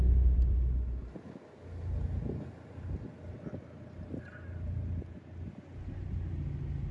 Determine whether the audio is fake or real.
real